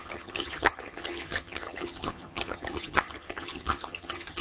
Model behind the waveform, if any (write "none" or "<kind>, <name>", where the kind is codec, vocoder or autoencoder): vocoder, HiFi-GAN